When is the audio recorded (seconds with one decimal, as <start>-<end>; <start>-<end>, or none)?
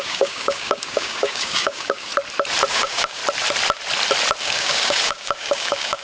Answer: 2.1-2.7; 3.2-4.4